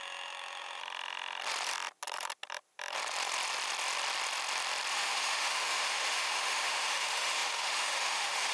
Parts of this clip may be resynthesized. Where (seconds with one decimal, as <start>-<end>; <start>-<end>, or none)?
0.0-0.8; 4.9-8.5